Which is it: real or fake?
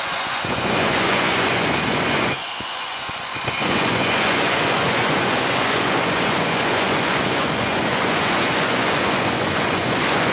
fake